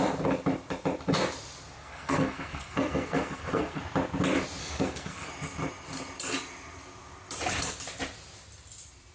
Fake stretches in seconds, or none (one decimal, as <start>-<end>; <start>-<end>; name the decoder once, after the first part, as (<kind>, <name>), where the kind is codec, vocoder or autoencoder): 1.8-3.8 (codec, SNAC); 4.6-5.3